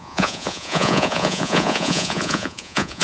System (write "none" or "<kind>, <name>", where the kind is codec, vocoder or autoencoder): vocoder, Vocos